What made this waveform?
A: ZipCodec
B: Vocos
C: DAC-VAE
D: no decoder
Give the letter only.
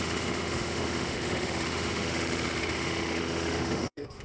C